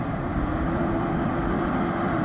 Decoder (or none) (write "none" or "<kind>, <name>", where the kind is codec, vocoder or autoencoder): vocoder, BigVGAN v2